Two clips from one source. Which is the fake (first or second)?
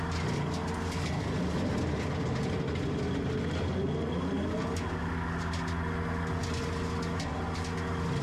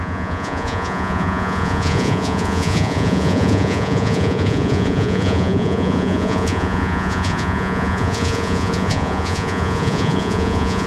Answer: second